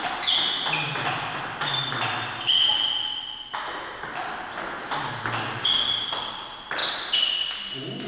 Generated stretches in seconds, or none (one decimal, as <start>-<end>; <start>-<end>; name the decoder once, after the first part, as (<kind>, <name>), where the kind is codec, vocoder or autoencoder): none